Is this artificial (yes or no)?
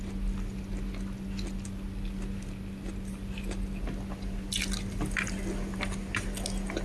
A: no